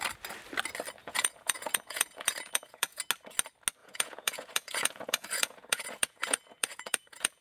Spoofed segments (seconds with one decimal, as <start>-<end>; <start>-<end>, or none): 1.0-3.0; 3.8-7.4